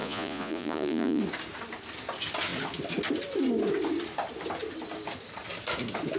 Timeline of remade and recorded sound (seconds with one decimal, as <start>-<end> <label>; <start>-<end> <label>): 0.0-1.2 remade; 1.2-6.2 recorded

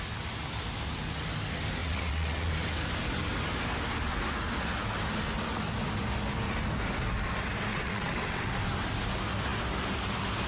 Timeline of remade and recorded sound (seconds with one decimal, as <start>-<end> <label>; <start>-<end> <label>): 0.0-1.8 recorded; 1.8-2.5 remade; 2.5-7.7 recorded; 7.7-8.5 remade; 8.5-10.5 recorded

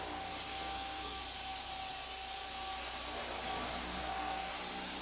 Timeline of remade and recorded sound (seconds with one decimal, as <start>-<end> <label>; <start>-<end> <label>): 0.0-0.5 recorded; 0.5-1.2 remade; 1.2-4.0 recorded; 4.0-4.5 remade; 4.5-5.0 recorded

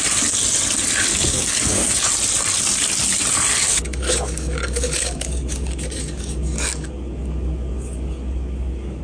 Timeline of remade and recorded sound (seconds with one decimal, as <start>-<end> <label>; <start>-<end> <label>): 0.0-1.1 recorded; 1.1-2.1 remade; 2.1-3.7 recorded; 3.7-9.0 remade

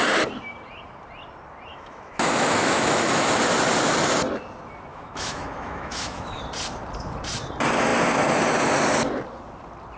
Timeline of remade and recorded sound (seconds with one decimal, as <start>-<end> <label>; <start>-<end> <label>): 0.0-1.7 recorded; 1.7-3.3 remade; 3.3-4.9 recorded; 4.9-6.4 remade; 6.4-10.0 recorded

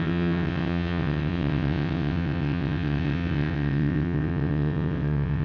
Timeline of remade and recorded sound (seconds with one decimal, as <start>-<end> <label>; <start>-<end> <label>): 0.0-5.4 remade